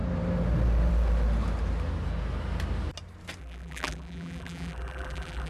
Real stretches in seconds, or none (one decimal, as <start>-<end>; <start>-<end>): 0.0-3.4